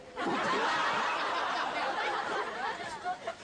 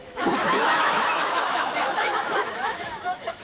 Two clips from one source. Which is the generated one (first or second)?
second